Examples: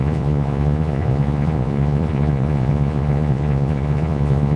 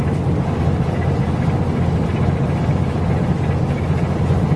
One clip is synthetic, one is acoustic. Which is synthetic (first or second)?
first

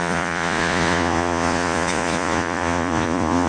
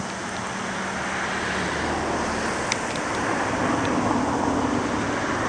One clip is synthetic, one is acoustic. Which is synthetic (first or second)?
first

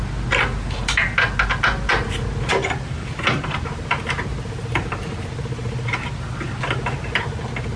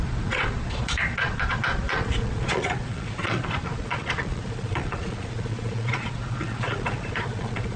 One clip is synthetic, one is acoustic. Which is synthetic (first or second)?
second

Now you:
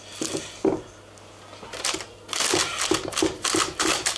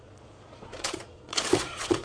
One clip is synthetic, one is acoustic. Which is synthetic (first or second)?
second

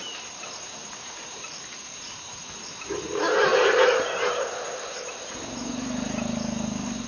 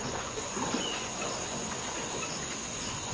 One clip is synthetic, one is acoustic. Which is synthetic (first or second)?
second